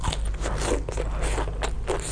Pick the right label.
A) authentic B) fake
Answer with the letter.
A